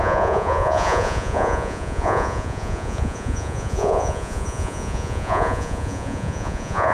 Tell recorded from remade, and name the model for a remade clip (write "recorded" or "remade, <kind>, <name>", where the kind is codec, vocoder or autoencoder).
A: remade, vocoder, Vocos